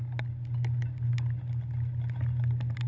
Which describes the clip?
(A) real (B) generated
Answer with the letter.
A